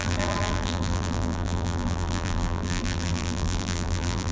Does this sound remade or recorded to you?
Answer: remade